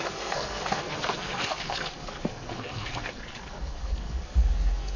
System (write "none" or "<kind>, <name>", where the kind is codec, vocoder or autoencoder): codec, SNAC